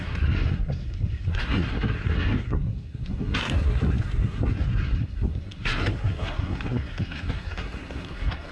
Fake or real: fake